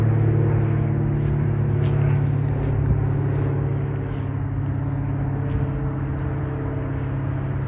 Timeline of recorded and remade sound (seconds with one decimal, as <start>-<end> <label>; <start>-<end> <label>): 0.0-7.7 recorded